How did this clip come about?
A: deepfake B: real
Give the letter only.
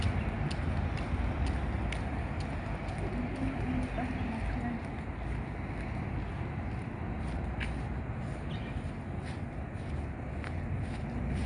B